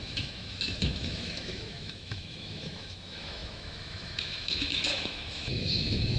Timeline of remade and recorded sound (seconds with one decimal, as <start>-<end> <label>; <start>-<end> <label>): 0.0-6.2 remade